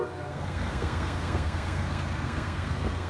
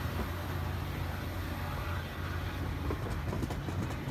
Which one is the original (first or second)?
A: second